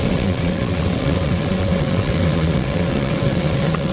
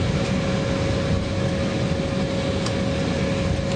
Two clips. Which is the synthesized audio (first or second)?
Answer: first